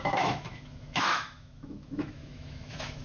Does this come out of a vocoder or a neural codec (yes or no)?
yes